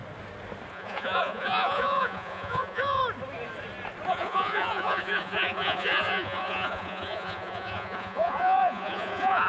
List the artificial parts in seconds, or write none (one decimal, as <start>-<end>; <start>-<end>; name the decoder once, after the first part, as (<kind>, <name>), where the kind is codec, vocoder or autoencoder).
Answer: 0.7-3.0 (vocoder, Vocos); 4.1-9.5